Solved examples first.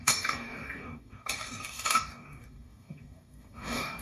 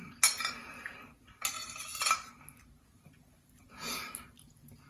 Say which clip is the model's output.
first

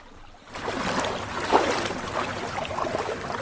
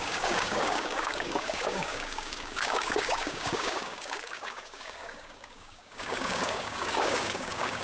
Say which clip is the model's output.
second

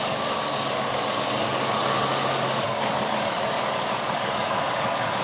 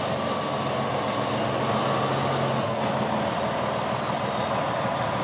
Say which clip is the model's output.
first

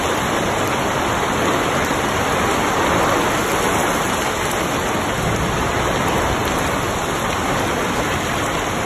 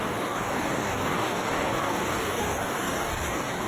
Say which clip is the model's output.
second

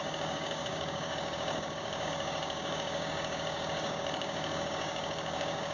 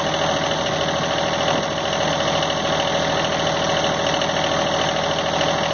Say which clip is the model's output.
first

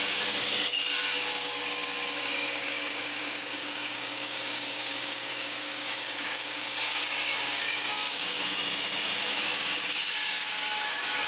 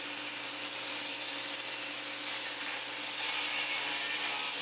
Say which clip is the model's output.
first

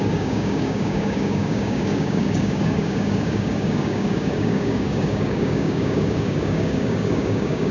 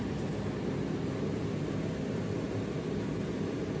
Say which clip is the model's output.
first